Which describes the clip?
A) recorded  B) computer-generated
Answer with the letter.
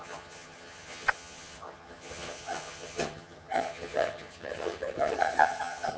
B